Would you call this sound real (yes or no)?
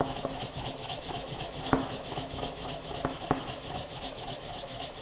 no